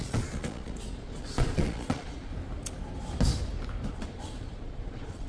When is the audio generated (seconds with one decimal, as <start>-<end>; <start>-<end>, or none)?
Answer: 0.0-2.3; 3.9-5.3